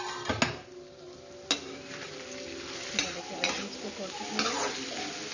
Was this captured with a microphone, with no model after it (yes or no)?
yes